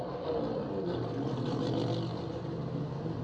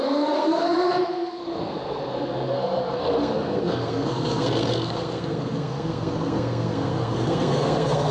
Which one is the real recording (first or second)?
first